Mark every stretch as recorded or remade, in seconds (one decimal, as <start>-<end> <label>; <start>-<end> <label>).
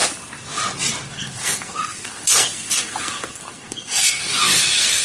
0.0-1.1 recorded; 1.1-5.0 remade